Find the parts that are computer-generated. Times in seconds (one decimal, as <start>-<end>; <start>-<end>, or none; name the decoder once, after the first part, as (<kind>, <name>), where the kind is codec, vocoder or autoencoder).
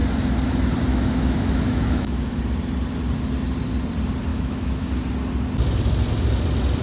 0.9-2.4 (autoencoder, DAC-VAE); 4.3-4.9